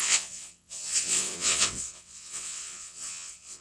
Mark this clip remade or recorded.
remade